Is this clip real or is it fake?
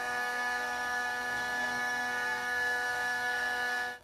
fake